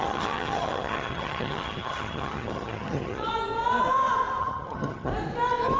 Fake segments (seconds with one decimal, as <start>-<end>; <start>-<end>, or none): 0.0-3.3; 4.4-5.1